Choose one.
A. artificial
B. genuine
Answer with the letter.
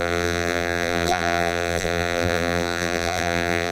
A